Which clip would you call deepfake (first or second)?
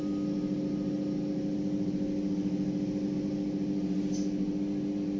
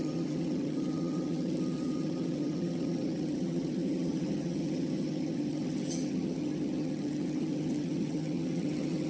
second